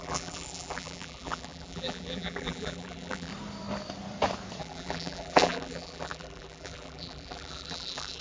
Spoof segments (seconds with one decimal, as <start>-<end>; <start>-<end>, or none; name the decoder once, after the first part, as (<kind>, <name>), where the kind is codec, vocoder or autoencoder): 0.0-3.3 (vocoder, BigVGAN v2); 4.6-8.2